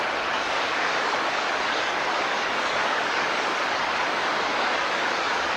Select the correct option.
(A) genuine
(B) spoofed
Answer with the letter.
B